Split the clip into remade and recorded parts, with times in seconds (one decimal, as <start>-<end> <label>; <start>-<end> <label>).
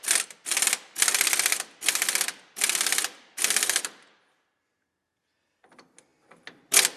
0.0-7.0 recorded